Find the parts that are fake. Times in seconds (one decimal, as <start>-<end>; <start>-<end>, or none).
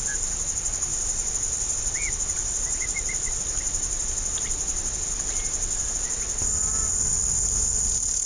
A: 0.9-5.9; 7.1-8.3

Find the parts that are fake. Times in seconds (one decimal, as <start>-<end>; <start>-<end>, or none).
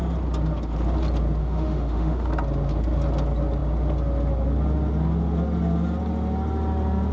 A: 1.4-2.3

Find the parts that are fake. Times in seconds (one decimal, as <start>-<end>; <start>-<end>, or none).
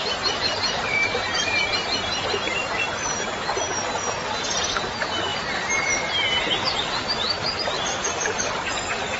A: 1.0-1.6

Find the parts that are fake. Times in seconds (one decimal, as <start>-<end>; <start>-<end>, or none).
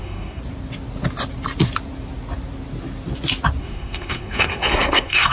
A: 0.0-0.4; 3.6-5.3